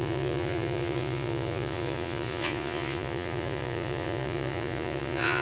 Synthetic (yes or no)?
yes